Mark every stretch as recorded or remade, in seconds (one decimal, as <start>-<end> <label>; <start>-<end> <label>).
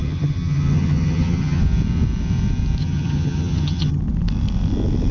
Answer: 0.0-1.6 remade; 1.6-2.8 recorded; 2.8-4.0 remade; 4.0-5.1 recorded